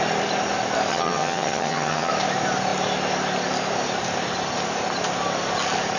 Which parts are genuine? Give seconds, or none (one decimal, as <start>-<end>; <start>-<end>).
0.0-0.9; 2.1-6.0